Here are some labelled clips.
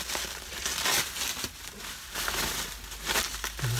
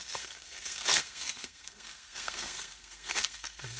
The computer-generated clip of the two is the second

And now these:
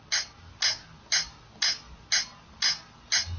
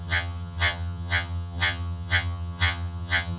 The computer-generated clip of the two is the second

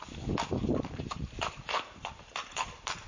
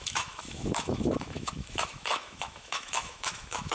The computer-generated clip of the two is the second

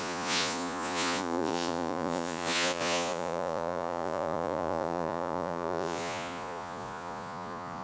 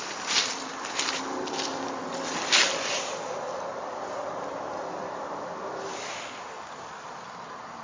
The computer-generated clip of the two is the first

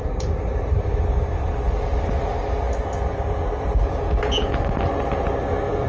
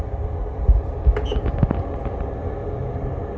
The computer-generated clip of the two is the second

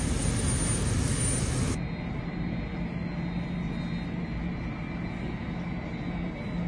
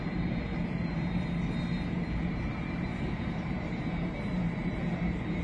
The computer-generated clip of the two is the second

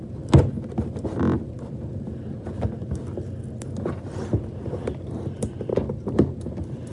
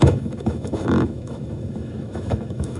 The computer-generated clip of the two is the second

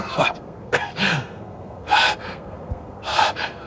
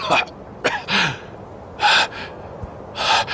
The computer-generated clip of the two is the first